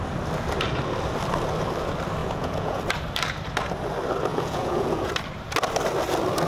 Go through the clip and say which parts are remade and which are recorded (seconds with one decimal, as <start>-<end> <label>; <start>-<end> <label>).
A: 0.0-2.2 recorded; 2.2-2.8 remade; 2.8-4.3 recorded; 4.3-5.1 remade; 5.1-6.5 recorded